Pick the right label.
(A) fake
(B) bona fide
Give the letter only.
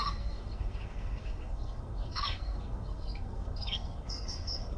A